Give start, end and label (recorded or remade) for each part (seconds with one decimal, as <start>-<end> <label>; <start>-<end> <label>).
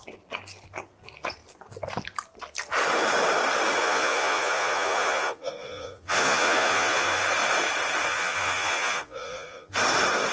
0.0-3.8 recorded; 3.8-7.2 remade; 7.2-8.1 recorded; 8.1-9.7 remade; 9.7-10.3 recorded